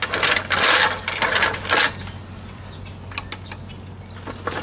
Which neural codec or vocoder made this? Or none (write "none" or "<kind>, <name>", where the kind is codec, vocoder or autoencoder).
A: none